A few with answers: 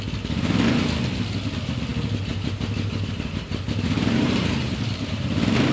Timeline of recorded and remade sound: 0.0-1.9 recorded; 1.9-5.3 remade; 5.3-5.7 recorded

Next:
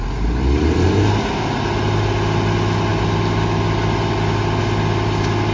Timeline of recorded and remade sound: 0.0-5.5 recorded

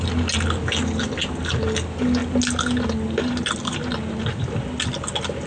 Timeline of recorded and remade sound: 0.0-5.5 recorded

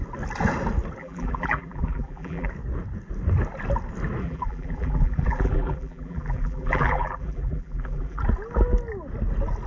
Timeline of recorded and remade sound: 0.0-1.0 recorded; 1.0-2.5 remade; 2.5-4.2 recorded; 4.2-8.2 remade; 8.2-9.7 recorded